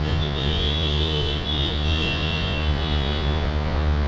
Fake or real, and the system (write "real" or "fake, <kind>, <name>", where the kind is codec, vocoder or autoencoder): fake, vocoder, Vocos